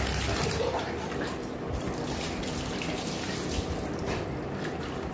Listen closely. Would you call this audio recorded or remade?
recorded